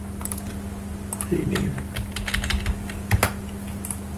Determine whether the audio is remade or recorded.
recorded